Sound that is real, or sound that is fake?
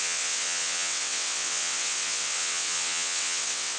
fake